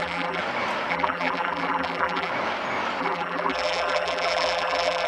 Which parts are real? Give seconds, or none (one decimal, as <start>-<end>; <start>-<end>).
0.4-0.9; 2.3-3.0